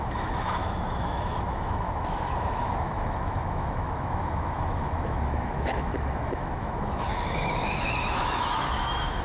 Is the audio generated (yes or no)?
yes